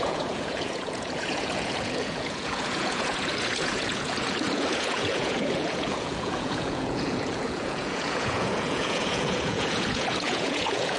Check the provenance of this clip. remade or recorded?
remade